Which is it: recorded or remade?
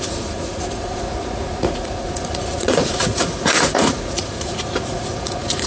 remade